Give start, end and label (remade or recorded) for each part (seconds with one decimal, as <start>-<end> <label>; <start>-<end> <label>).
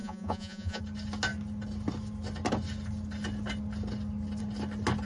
0.0-0.8 remade; 0.8-5.1 recorded